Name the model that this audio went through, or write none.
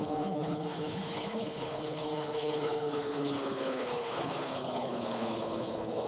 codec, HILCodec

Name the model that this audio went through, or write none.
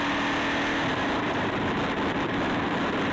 none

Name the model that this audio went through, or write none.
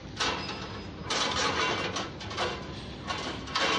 none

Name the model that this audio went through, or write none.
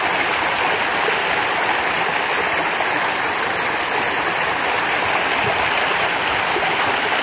none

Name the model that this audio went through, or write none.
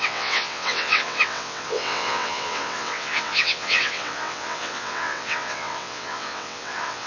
vocoder, WaveNeXt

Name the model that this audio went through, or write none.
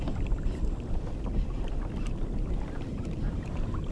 none